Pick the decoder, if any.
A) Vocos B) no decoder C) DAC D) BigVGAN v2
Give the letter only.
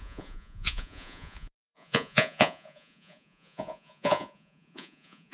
A